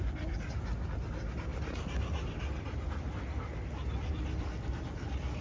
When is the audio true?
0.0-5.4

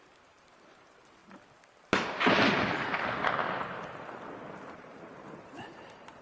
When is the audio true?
1.2-4.7

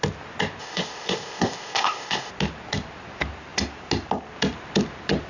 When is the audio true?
0.0-0.6; 2.3-5.3

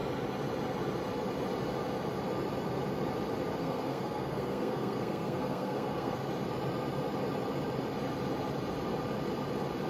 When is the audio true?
0.0-3.6; 6.3-9.9

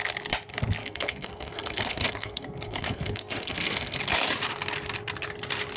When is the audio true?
0.0-0.8; 4.0-5.8

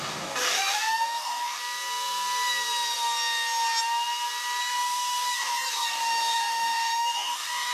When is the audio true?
1.6-4.6

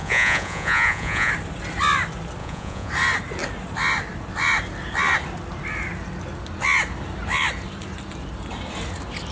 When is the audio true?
1.3-2.4; 2.9-9.3